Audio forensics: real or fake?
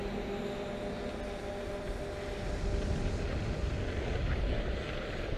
real